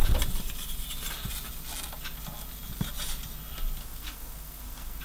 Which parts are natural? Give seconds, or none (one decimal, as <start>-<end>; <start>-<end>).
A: 0.0-3.8